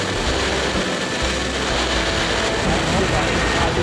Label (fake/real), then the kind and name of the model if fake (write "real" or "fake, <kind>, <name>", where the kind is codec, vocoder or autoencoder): real